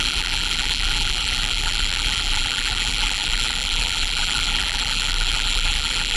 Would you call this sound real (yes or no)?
no